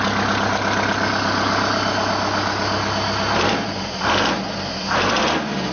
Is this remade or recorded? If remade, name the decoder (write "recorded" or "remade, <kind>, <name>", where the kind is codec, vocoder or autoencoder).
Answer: recorded